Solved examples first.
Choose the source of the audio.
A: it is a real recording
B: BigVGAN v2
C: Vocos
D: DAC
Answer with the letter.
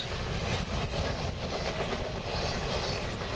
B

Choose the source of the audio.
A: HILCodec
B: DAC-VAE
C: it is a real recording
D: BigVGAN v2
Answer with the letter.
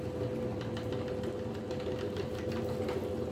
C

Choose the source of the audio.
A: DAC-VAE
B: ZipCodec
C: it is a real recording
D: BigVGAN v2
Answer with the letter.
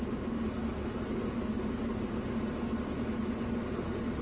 C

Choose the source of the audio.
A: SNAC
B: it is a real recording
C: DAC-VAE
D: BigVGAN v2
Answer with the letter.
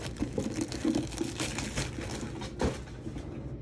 B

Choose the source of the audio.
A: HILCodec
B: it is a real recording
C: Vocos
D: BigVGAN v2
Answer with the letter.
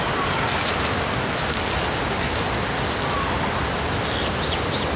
B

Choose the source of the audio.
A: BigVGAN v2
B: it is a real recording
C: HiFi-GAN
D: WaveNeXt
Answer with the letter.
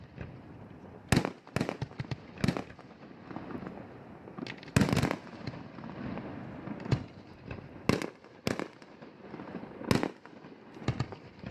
B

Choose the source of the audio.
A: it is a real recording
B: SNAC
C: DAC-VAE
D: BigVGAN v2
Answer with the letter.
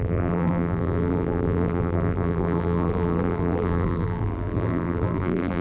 D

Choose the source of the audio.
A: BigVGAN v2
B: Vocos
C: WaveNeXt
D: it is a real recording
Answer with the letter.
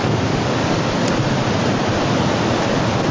A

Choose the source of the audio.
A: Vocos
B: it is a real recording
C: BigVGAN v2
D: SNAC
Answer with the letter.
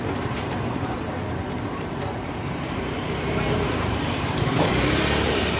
C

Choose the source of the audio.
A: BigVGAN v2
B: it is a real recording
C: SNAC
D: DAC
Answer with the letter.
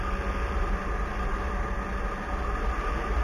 A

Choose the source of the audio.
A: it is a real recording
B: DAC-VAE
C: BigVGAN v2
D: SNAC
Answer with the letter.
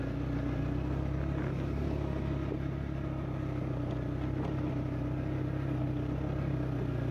A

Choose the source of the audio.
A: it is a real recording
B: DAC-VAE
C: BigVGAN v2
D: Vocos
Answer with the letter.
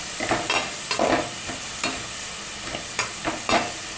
A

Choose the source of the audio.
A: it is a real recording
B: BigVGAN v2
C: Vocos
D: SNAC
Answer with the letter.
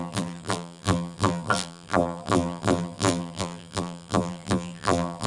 B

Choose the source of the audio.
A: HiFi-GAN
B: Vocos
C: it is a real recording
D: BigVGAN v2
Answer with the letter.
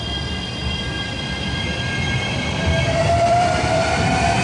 D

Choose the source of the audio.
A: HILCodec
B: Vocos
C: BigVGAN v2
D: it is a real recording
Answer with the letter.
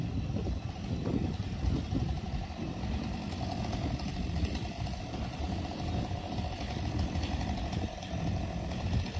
C